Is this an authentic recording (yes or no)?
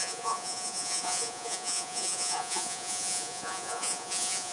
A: no